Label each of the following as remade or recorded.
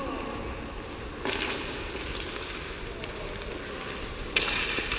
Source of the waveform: recorded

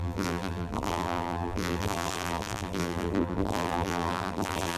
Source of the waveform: remade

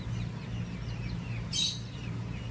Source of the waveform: recorded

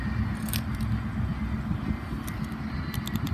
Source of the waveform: recorded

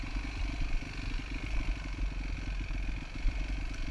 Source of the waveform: recorded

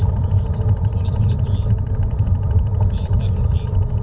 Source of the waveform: remade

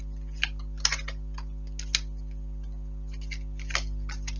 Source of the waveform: recorded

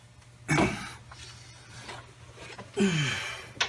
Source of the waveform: recorded